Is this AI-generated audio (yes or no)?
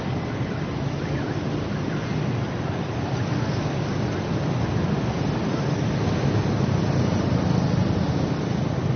no